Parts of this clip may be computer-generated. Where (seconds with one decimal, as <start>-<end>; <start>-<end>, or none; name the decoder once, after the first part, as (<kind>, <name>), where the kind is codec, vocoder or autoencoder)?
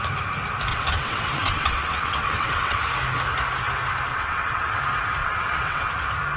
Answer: 0.7-2.8 (vocoder, WaveNeXt); 4.1-4.8; 5.2-5.9